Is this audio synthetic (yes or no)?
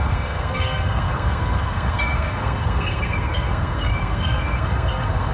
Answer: yes